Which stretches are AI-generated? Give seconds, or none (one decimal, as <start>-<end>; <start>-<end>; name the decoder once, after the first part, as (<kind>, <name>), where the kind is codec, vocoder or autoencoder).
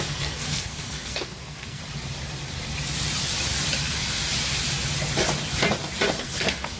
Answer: 0.0-1.8 (codec, SNAC); 3.8-4.2; 6.1-6.8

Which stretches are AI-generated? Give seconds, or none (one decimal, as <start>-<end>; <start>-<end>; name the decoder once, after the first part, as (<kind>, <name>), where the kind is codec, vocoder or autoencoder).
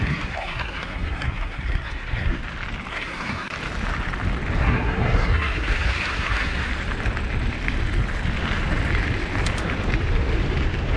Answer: 0.0-2.4 (codec, SNAC); 2.9-3.5; 4.6-6.7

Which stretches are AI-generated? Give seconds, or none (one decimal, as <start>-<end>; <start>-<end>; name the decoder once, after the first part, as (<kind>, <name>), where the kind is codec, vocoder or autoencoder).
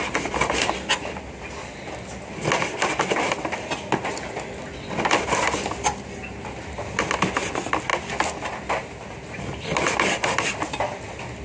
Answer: none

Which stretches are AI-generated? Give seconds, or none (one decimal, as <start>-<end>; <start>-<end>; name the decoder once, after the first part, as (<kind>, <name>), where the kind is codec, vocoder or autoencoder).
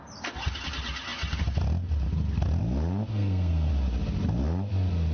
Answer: 3.1-3.7 (codec, SNAC)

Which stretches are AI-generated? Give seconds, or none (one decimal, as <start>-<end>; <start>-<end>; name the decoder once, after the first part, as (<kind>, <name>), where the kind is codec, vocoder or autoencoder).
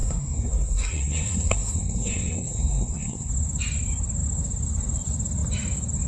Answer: 0.0-3.3 (codec, SNAC)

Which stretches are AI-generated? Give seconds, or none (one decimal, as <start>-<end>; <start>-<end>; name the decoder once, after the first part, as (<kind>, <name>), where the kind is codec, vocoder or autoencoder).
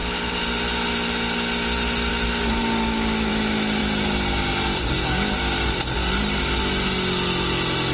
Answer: none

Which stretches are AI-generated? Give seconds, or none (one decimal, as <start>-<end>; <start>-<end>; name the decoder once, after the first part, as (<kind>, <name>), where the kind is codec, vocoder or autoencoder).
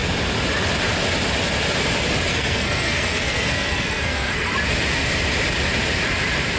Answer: 2.3-4.5 (codec, SNAC)